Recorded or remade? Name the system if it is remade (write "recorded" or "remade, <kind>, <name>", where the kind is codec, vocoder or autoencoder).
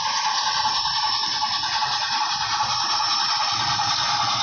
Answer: remade, vocoder, BigVGAN v2